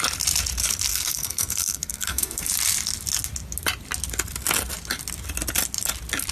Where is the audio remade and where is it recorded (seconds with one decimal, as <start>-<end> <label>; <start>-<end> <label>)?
0.0-0.9 recorded; 0.9-2.5 remade; 2.5-6.3 recorded